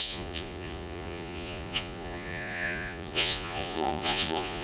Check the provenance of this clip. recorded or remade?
remade